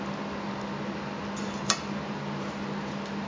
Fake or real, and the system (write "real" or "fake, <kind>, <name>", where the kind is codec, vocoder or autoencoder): real